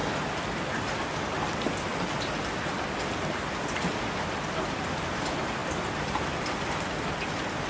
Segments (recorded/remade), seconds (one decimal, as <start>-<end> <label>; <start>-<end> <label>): 0.0-7.7 recorded